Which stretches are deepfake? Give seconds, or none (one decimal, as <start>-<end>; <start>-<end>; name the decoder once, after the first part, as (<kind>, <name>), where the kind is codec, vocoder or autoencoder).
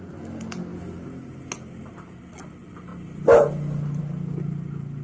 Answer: none